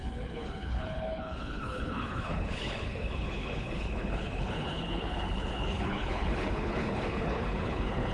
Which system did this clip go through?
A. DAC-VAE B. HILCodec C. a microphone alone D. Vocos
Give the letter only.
B